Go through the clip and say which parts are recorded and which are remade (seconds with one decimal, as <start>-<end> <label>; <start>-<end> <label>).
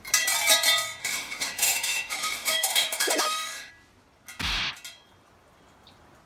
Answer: 0.0-1.0 recorded; 1.0-3.7 remade; 3.7-6.3 recorded